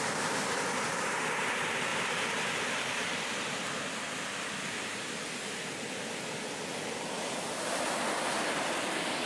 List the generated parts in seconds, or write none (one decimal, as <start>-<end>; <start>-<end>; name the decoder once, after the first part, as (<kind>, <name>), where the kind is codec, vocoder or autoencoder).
none